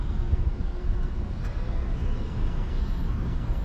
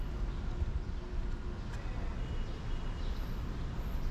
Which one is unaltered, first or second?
second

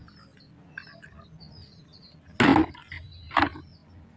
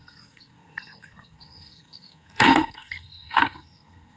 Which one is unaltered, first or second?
first